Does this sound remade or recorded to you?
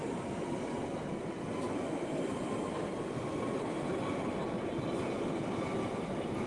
recorded